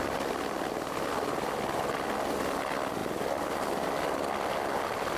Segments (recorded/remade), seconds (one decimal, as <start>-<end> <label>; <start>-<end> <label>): 0.0-5.2 recorded